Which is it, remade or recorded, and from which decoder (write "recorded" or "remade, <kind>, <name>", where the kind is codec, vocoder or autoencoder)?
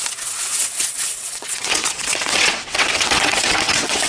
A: remade, vocoder, WaveNeXt